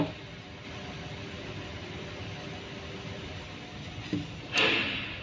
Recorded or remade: recorded